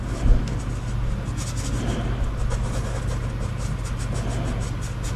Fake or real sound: real